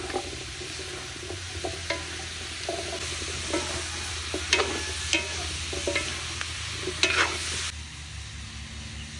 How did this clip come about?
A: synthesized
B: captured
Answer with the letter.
B